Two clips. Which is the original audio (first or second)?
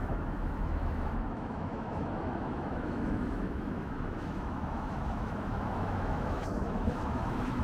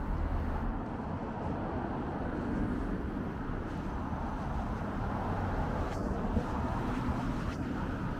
second